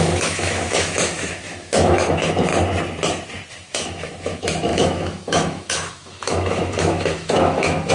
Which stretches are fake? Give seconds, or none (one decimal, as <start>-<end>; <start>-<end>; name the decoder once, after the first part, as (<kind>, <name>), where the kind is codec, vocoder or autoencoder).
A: 0.0-2.5 (autoencoder, DAC-VAE); 3.5-7.9